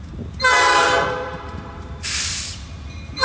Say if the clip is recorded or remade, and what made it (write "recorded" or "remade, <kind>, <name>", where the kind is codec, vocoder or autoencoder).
remade, vocoder, BigVGAN v2